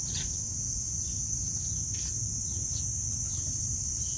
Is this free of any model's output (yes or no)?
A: yes